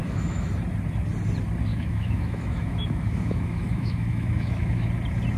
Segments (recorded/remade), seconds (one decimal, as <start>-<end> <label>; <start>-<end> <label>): 0.0-0.5 remade; 0.5-1.7 recorded; 1.7-4.9 remade; 4.9-5.4 recorded